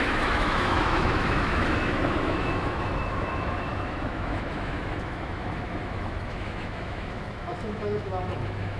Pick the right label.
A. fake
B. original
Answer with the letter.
A